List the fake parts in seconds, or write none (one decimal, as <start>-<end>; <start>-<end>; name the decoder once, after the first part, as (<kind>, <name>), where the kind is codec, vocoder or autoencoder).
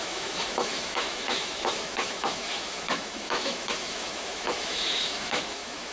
0.0-5.9 (autoencoder, DAC-VAE)